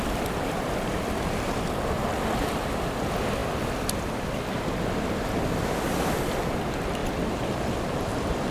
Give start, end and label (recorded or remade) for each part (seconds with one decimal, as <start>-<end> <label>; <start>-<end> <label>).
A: 0.0-8.5 recorded